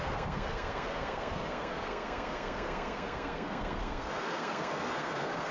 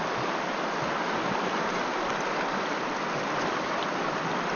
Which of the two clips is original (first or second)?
second